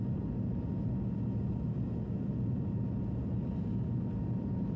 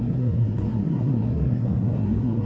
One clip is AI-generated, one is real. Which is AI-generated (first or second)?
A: second